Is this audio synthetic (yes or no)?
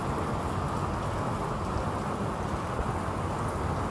no